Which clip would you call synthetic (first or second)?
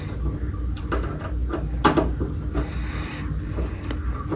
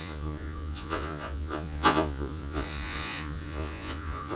second